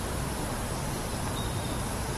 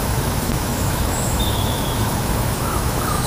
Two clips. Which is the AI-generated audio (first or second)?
second